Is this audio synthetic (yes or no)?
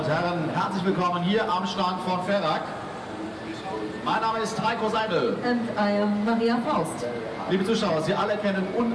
no